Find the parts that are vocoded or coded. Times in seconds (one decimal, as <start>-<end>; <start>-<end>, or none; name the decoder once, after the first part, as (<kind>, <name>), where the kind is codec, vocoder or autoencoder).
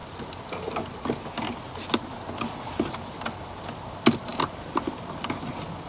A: none